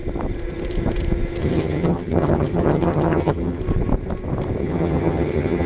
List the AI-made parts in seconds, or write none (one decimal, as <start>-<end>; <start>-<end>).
1.4-3.6; 4.6-5.7